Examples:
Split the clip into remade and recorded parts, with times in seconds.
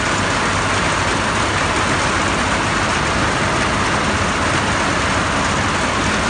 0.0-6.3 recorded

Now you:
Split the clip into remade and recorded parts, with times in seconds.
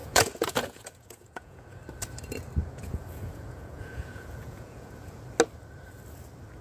0.0-1.8 remade; 1.8-2.6 recorded; 2.6-5.2 remade; 5.2-6.6 recorded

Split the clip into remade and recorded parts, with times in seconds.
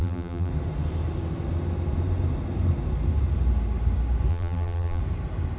0.0-0.5 remade; 0.5-4.3 recorded; 4.3-5.0 remade; 5.0-5.6 recorded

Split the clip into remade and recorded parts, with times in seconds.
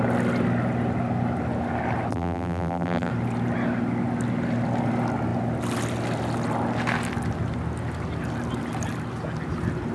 0.0-2.1 recorded; 2.1-3.1 remade; 3.1-9.9 recorded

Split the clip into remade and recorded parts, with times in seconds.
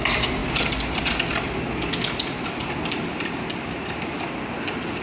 0.0-5.0 recorded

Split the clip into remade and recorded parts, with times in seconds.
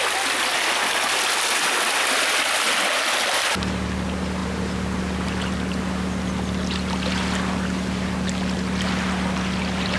0.0-10.0 recorded